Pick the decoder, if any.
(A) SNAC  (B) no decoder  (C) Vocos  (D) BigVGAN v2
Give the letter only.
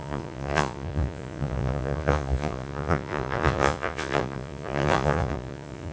C